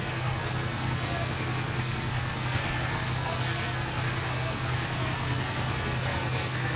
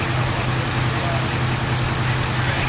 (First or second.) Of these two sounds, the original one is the second